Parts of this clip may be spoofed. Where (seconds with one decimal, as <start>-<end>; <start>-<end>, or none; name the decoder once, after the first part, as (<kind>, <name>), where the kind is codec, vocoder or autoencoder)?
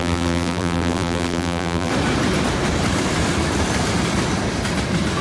0.0-1.9 (vocoder, BigVGAN v2)